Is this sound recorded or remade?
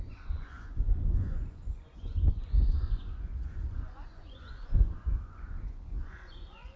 remade